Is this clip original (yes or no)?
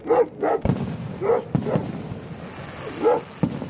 yes